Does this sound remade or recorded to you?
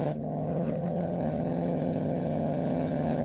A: remade